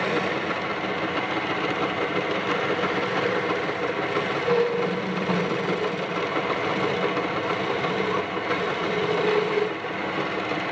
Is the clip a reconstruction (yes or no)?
no